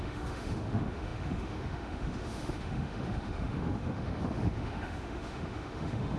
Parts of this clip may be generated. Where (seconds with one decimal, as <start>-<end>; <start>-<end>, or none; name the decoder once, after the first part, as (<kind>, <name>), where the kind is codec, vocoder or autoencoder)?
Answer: 0.0-6.2 (autoencoder, DAC-VAE)